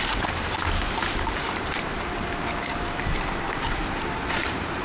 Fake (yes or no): yes